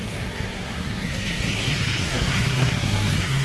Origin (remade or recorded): remade